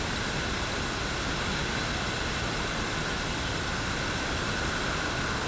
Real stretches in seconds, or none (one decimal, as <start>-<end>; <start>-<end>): 0.0-5.5